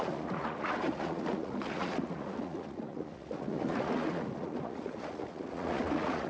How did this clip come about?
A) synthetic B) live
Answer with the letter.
A